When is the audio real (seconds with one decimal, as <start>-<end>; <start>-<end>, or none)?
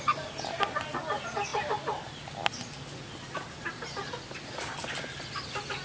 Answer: 0.0-5.8